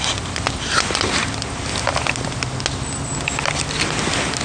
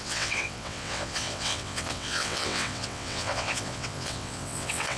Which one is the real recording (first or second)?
first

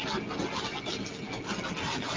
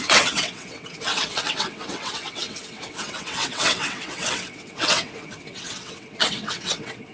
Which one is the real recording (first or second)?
first